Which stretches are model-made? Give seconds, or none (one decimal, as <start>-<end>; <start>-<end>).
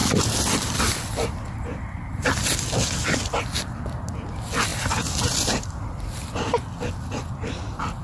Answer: 0.0-3.4; 4.7-6.3